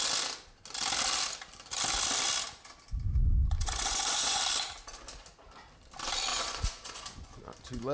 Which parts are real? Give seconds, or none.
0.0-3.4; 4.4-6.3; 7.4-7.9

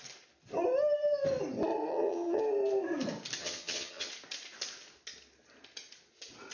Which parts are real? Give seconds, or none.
0.0-1.9; 2.4-3.4; 4.1-6.5

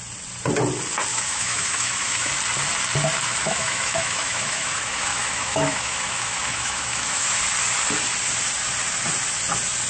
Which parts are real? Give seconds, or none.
0.0-1.1; 2.3-3.4; 7.4-9.9